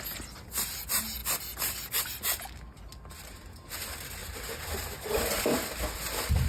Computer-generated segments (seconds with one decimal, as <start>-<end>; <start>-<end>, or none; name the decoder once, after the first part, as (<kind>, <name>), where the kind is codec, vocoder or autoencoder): 4.2-5.4 (vocoder, BigVGAN v2)